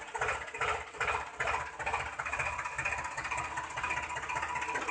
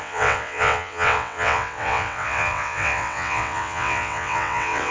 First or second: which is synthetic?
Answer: second